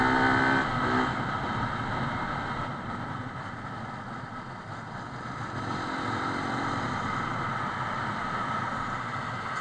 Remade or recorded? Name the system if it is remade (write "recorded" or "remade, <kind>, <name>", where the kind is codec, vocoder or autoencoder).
recorded